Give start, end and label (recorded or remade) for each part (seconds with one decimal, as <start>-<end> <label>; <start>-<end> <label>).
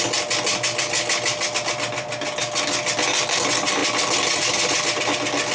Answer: 0.0-5.5 recorded